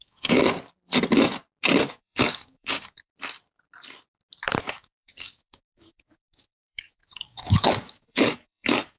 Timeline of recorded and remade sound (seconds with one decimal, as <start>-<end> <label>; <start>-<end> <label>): 0.0-0.4 remade; 0.4-1.9 recorded; 1.9-3.1 remade; 3.1-4.6 recorded; 4.6-9.0 remade